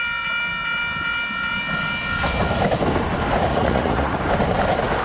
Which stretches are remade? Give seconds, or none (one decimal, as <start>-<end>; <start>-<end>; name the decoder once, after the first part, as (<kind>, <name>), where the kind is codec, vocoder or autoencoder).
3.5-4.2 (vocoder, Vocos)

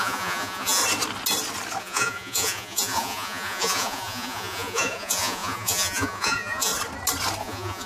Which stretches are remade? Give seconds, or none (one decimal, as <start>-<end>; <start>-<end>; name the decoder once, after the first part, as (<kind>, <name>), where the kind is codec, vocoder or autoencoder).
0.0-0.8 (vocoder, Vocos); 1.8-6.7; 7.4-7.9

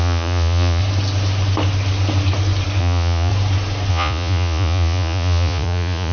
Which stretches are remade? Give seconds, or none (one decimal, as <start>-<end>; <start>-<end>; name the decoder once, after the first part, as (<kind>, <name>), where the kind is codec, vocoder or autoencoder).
0.0-0.8 (vocoder, Vocos); 2.8-3.3; 3.9-6.1